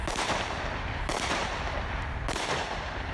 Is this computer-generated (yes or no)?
no